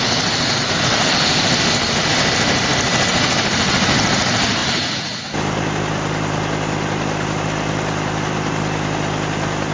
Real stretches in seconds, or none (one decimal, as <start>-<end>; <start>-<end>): 0.0-9.7